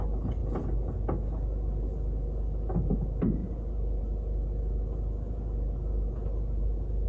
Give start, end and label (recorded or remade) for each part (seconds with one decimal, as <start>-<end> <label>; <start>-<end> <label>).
0.0-7.1 recorded